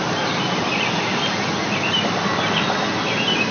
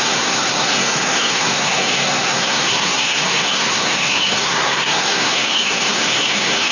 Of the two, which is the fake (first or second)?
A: second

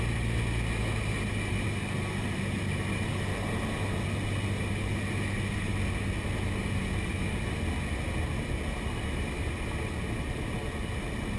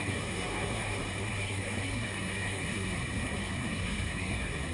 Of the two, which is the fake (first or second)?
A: second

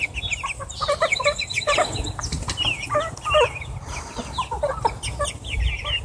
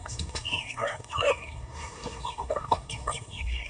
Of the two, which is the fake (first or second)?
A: second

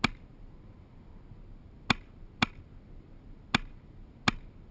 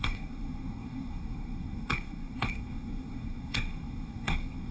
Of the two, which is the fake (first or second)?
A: second